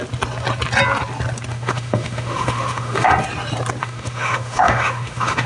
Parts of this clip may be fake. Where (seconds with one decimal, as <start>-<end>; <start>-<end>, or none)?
1.5-3.1; 3.8-5.5